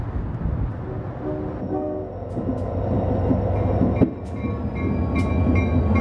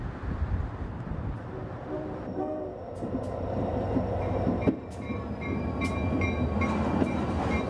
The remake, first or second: second